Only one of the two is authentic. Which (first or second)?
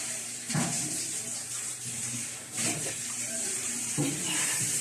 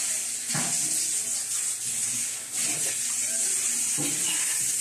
second